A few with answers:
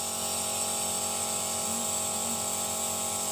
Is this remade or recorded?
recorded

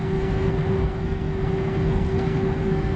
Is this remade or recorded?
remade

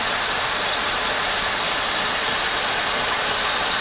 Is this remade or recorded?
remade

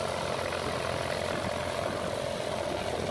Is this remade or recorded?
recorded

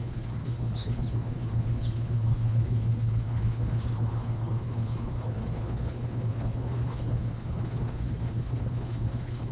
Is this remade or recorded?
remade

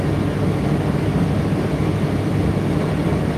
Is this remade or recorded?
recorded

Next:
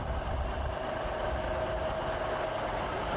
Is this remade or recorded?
recorded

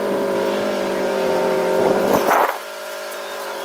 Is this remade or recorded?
remade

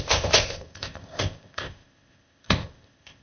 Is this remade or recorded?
remade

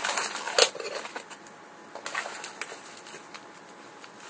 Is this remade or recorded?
recorded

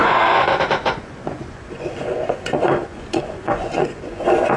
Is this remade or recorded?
remade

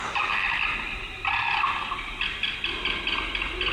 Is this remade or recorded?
recorded